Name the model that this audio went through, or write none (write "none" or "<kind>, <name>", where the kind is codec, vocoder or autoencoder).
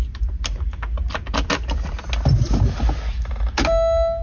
none